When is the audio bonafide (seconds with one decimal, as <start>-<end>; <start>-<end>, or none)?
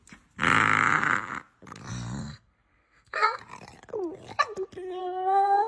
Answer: 0.0-2.2; 3.4-5.0